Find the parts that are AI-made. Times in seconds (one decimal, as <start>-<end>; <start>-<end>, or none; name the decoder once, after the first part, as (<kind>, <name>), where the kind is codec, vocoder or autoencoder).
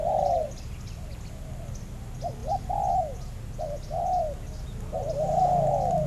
none